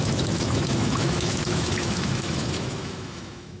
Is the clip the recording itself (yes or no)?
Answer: no